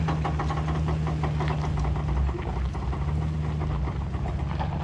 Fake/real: real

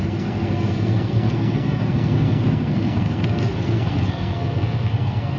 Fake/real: fake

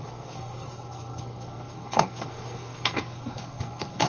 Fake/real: fake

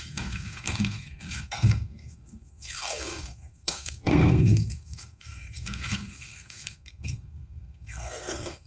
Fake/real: fake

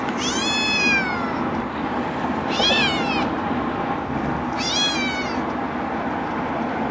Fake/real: real